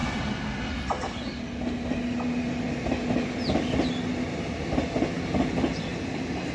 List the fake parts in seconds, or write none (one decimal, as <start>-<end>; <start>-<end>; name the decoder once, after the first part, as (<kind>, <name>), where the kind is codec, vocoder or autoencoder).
none